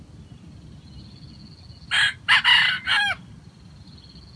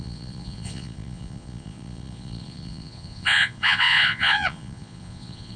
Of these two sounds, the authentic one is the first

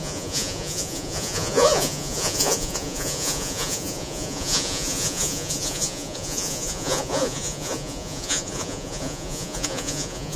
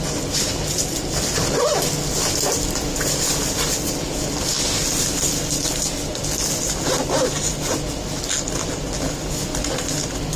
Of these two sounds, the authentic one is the second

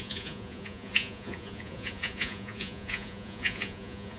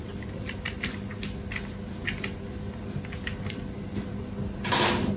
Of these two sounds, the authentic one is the second